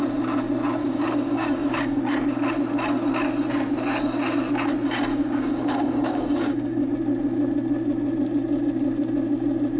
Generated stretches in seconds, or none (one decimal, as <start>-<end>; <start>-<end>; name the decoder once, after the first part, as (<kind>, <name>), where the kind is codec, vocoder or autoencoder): 0.8-2.0 (codec, DAC); 5.1-6.9